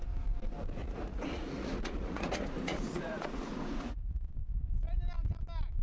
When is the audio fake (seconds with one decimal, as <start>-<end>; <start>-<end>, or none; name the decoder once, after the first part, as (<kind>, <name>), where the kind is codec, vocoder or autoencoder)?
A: 0.8-4.3 (vocoder, Vocos)